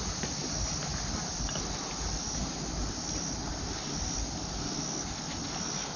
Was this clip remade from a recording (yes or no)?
no